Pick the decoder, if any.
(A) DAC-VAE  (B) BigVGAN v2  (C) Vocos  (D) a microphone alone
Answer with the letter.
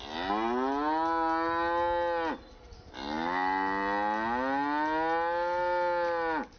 D